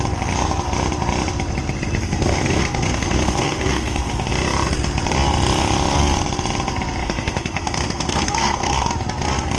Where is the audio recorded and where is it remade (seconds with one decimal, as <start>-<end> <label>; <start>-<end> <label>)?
0.0-2.0 recorded; 2.0-4.1 remade; 4.1-7.0 recorded; 7.0-8.9 remade; 8.9-9.6 recorded